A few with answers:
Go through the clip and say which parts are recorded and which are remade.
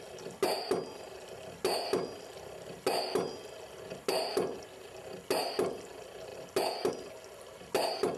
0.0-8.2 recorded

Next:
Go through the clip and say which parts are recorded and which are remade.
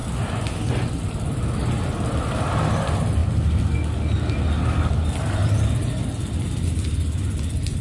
0.0-0.7 recorded; 0.7-3.2 remade; 3.2-4.9 recorded; 4.9-7.8 remade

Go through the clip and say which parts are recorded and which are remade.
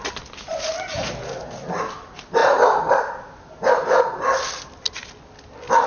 0.0-0.5 recorded; 0.5-1.1 remade; 1.1-2.4 recorded; 2.4-4.7 remade; 4.7-5.9 recorded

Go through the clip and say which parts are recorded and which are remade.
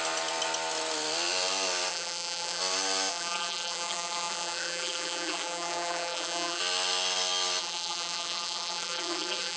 0.0-1.9 recorded; 1.9-2.6 remade; 2.6-3.1 recorded; 3.1-6.6 remade; 6.6-7.6 recorded; 7.6-9.6 remade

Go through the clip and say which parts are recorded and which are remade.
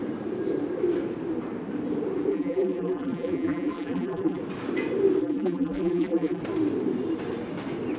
0.0-2.3 recorded; 2.3-4.4 remade; 4.4-5.2 recorded; 5.2-6.4 remade; 6.4-8.0 recorded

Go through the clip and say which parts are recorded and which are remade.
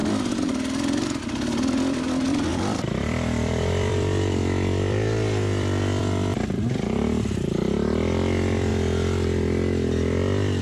0.0-2.5 recorded; 2.5-6.0 remade; 6.0-10.6 recorded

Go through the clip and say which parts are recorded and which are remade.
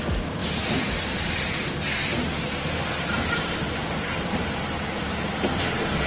0.0-0.4 remade; 0.4-0.9 recorded; 0.9-6.1 remade